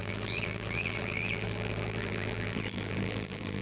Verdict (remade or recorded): remade